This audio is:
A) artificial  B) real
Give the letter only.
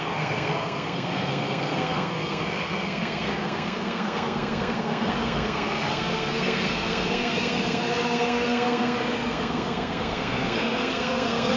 A